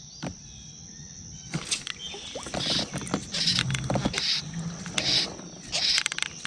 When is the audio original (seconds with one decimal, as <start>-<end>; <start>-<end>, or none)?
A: 0.0-6.5